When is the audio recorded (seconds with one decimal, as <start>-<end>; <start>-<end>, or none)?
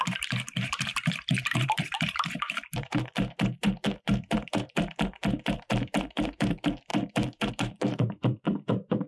none